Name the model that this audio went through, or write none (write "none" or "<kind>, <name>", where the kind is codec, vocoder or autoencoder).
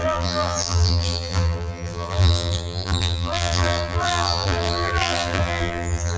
vocoder, BigVGAN v2